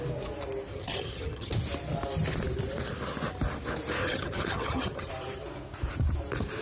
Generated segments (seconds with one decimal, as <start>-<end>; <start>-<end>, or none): 0.7-1.5; 4.0-5.1

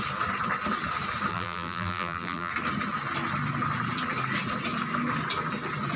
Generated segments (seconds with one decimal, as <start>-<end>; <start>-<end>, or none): 1.3-2.5

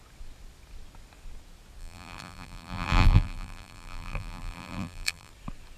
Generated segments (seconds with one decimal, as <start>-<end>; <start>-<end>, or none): 1.8-5.3

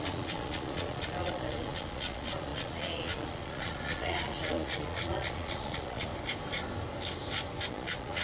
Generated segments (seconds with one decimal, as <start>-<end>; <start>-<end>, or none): 0.0-6.1; 7.7-8.2

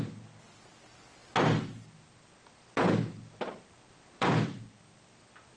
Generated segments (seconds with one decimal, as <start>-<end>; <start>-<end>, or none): none

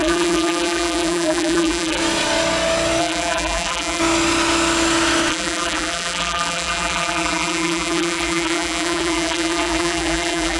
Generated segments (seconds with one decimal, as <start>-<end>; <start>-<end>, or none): 0.0-2.0; 3.0-4.0; 5.3-10.6